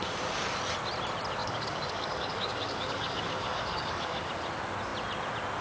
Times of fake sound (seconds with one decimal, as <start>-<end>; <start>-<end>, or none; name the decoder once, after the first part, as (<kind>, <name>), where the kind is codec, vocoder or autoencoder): 1.4-4.3 (codec, DAC)